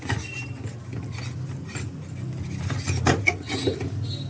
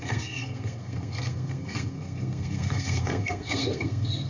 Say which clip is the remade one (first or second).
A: second